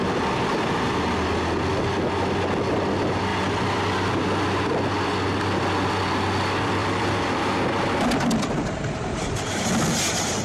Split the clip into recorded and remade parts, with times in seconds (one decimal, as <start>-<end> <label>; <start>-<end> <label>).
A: 0.0-3.3 recorded; 3.3-3.8 remade; 3.8-6.8 recorded; 6.8-7.4 remade; 7.4-10.4 recorded